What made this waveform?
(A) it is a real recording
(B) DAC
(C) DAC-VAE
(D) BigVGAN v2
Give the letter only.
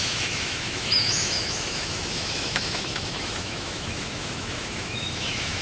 C